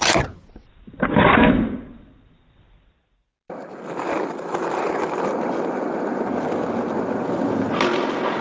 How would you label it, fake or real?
real